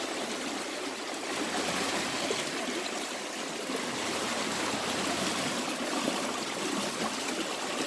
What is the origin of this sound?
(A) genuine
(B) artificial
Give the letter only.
A